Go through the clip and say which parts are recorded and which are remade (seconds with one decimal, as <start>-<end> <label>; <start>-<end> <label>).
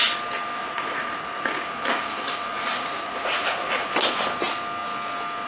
0.0-0.6 recorded; 0.6-3.9 remade; 3.9-5.5 recorded